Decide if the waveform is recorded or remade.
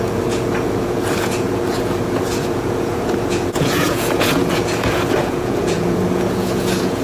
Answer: remade